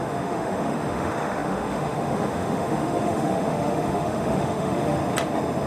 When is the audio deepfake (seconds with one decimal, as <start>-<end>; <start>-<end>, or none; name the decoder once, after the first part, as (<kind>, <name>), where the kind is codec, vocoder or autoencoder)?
0.0-5.0 (autoencoder, DAC-VAE)